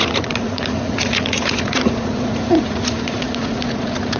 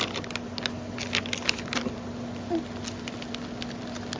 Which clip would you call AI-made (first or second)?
first